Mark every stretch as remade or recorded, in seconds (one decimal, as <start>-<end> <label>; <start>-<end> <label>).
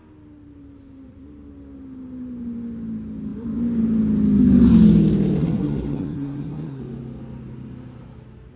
0.0-5.4 recorded; 5.4-6.8 remade; 6.8-8.6 recorded